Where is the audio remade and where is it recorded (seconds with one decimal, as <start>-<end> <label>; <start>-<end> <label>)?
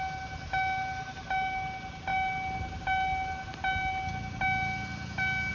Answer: 0.0-5.5 recorded